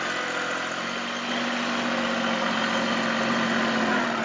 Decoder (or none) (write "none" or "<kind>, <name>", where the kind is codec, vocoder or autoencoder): none